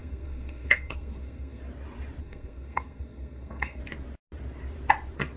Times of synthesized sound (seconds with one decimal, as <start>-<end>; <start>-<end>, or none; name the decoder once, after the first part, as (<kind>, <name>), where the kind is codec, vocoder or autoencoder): 0.0-1.6 (codec, SNAC); 2.2-3.8